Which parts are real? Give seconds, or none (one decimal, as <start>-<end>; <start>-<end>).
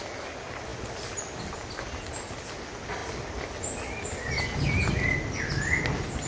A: 0.0-6.3